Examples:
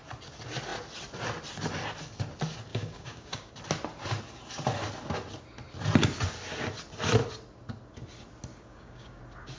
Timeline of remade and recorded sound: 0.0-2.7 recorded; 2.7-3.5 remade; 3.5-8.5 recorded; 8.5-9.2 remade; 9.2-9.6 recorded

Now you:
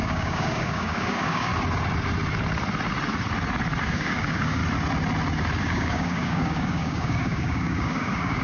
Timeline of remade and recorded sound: 0.0-1.5 remade; 1.5-3.8 recorded; 3.8-4.6 remade; 4.6-5.6 recorded; 5.6-8.4 remade

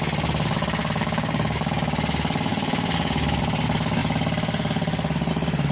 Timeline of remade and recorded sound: 0.0-0.8 recorded; 0.8-1.7 remade; 1.7-2.5 recorded; 2.5-3.4 remade; 3.4-5.7 recorded

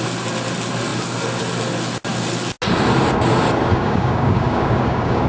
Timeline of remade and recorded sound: 0.0-3.7 recorded; 3.7-5.3 remade

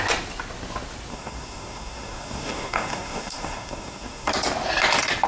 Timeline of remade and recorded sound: 0.0-1.1 recorded; 1.1-4.3 remade; 4.3-5.3 recorded

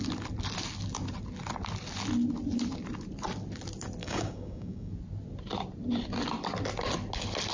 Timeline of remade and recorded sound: 0.0-4.0 recorded; 4.0-4.9 remade; 4.9-7.5 recorded

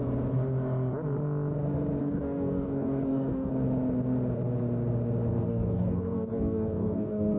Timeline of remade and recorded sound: 0.0-2.0 recorded; 2.0-3.5 remade; 3.5-5.5 recorded; 5.5-7.4 remade

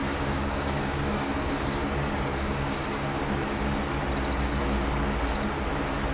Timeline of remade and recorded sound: 0.0-3.2 remade; 3.2-6.1 recorded